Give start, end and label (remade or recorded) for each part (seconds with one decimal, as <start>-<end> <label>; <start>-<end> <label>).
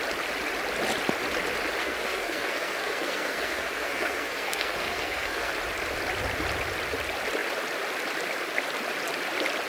0.0-1.8 recorded; 1.8-5.5 remade; 5.5-9.7 recorded